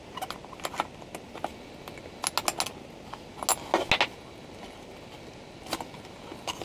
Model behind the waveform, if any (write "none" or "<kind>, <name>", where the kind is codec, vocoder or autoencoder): none